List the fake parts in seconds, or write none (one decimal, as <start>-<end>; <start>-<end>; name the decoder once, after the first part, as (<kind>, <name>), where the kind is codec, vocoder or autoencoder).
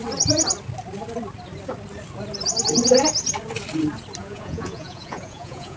4.2-5.8 (vocoder, Vocos)